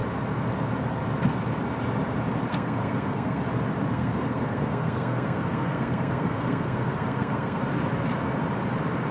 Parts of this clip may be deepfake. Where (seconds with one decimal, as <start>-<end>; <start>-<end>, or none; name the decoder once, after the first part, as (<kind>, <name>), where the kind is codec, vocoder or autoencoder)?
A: 2.5-3.4 (codec, SNAC); 3.9-7.6